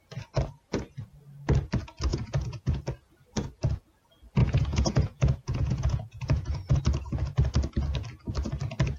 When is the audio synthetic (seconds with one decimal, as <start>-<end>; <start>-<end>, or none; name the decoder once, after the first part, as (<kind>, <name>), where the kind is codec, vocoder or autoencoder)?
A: 2.1-2.8 (vocoder, Vocos); 4.4-6.8